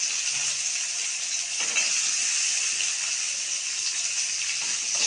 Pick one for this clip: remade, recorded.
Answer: recorded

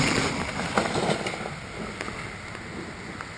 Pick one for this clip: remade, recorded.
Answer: recorded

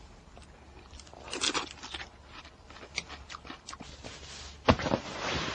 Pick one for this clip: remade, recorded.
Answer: recorded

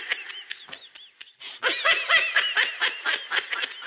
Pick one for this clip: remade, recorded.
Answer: recorded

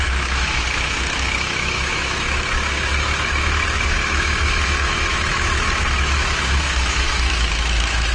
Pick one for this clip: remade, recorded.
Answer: remade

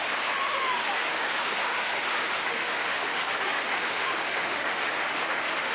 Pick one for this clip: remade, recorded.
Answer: remade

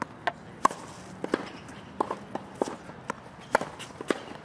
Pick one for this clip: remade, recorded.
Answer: recorded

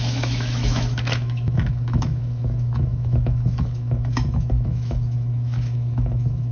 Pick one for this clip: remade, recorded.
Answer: remade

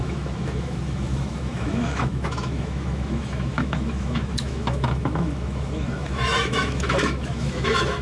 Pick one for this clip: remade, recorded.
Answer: remade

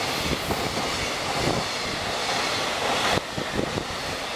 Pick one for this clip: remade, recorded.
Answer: recorded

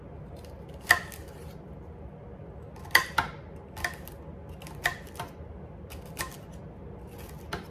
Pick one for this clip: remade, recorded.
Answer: recorded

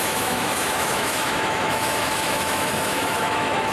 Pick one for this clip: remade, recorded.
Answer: remade